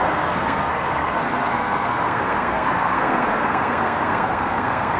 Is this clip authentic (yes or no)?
no